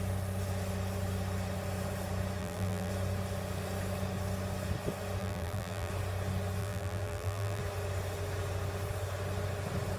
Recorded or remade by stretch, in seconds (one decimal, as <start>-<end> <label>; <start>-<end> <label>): 0.0-2.4 recorded; 2.4-2.9 remade; 2.9-5.2 recorded; 5.2-5.9 remade; 5.9-6.6 recorded; 6.6-7.6 remade; 7.6-10.0 recorded